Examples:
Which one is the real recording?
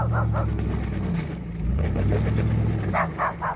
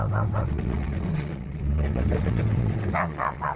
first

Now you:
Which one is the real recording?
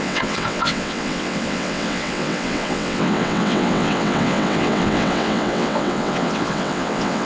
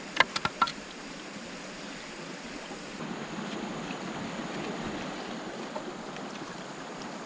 second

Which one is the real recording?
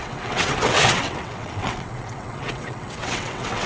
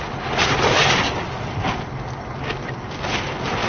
second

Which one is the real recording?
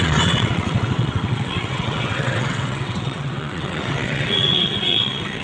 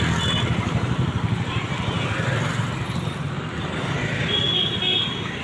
second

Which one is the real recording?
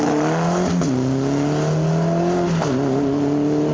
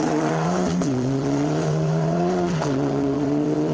first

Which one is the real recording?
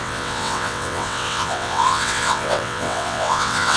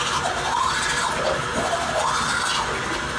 second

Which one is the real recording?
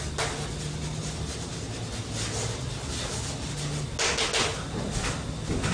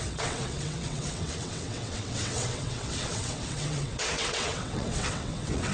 first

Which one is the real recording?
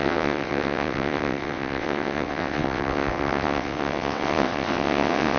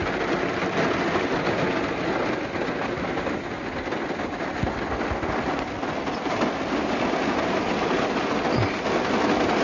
second